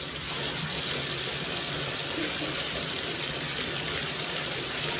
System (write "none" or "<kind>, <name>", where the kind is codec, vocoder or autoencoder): none